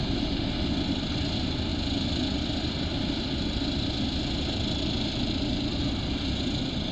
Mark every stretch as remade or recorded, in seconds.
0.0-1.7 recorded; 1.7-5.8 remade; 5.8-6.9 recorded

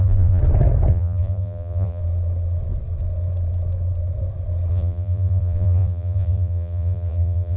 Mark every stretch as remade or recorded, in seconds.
0.0-0.4 remade; 0.4-0.9 recorded; 0.9-2.0 remade; 2.0-4.7 recorded; 4.7-7.6 remade

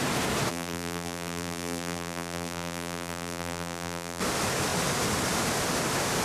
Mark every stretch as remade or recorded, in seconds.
0.0-0.5 recorded; 0.5-4.2 remade; 4.2-6.2 recorded